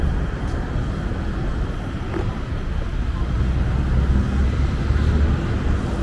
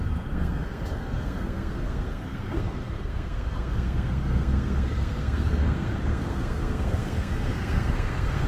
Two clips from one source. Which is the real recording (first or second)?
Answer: first